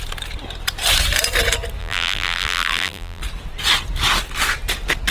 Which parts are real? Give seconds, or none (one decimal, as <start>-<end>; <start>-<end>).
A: 0.0-1.8; 3.2-5.1